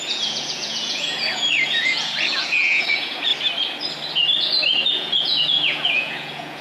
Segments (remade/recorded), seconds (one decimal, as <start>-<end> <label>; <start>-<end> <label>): 0.0-3.3 remade; 3.3-4.9 recorded; 4.9-6.6 remade